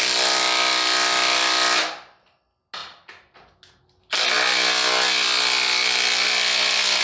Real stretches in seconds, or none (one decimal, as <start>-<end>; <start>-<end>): 0.0-7.0